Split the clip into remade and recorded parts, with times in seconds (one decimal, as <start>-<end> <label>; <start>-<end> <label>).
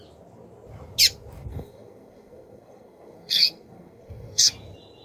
0.0-1.5 recorded; 1.5-4.5 remade; 4.5-5.0 recorded